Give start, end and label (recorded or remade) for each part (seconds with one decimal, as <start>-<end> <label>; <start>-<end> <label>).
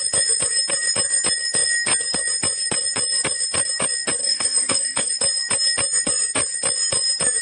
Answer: 0.0-4.2 recorded; 4.2-5.1 remade; 5.1-7.4 recorded